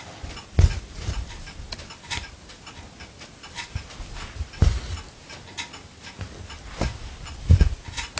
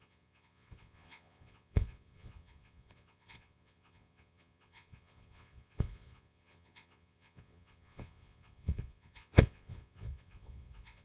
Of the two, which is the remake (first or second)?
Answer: second